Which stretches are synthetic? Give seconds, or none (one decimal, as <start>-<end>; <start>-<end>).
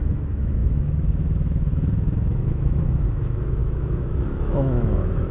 0.0-5.3